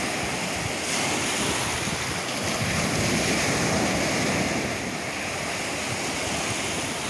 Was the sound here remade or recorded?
recorded